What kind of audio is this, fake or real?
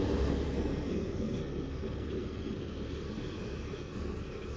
fake